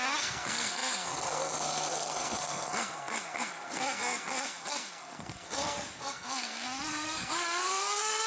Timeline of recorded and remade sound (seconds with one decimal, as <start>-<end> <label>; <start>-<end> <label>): 0.0-8.3 remade